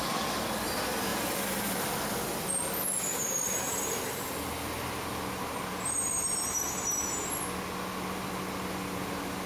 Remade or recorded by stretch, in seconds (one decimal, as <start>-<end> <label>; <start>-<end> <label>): 0.0-9.5 recorded